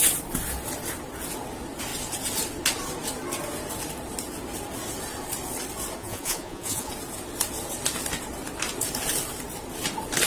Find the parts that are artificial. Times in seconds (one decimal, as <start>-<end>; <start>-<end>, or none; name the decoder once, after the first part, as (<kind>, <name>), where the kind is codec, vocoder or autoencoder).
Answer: 6.0-6.9 (vocoder, Vocos)